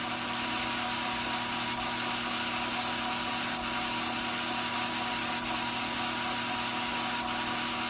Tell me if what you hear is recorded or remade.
recorded